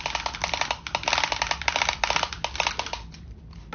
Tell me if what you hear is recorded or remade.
recorded